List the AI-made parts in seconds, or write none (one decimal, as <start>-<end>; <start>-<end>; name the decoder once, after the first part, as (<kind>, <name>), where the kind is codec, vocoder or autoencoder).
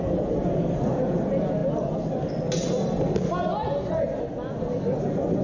none